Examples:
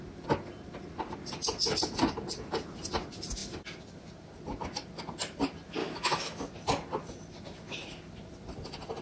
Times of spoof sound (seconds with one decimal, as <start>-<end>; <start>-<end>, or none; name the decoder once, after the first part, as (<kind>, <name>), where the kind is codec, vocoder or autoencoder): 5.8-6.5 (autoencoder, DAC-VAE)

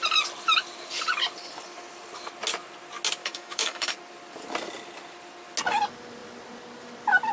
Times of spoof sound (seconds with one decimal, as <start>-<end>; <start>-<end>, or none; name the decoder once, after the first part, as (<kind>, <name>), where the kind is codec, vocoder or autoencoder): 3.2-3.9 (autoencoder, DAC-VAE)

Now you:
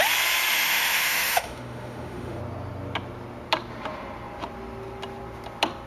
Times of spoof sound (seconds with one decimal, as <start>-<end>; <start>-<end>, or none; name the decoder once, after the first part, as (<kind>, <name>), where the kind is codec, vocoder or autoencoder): 0.5-2.4 (autoencoder, DAC-VAE)

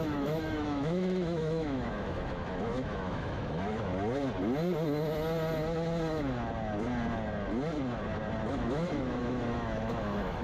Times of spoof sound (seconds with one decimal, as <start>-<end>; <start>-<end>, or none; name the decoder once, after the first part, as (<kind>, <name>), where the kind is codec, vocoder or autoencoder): 0.0-3.9 (autoencoder, DAC-VAE); 8.5-10.4